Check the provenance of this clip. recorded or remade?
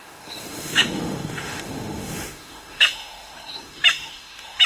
remade